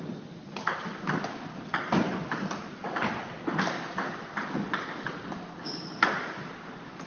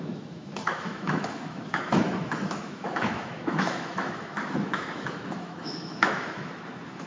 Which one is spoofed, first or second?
second